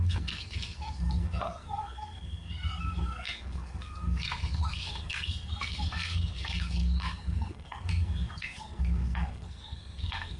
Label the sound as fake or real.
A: fake